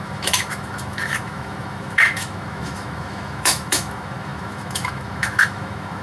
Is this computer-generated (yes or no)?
yes